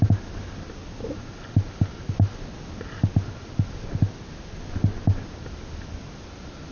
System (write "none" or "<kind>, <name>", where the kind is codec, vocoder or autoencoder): none